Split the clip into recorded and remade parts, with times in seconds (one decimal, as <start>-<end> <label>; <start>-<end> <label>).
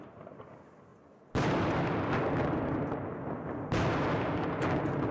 0.0-5.1 recorded